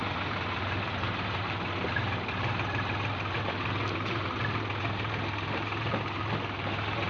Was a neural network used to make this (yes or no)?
yes